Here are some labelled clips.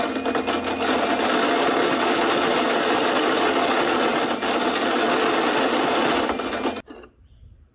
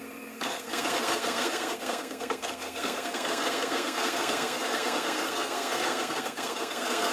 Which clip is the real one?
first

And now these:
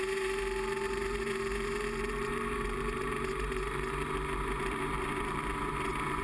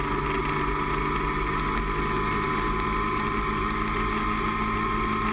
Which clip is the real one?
second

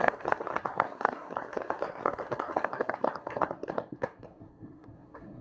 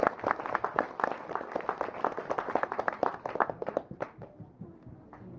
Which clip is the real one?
second